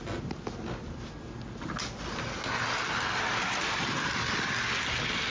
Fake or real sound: real